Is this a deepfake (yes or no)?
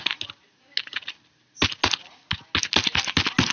no